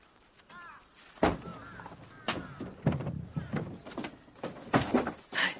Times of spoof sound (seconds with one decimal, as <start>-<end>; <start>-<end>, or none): none